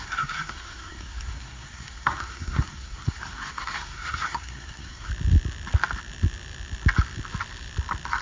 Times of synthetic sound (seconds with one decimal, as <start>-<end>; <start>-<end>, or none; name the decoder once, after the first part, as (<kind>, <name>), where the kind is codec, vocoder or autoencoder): 0.0-5.1 (codec, SNAC)